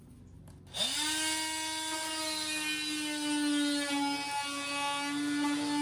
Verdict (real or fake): real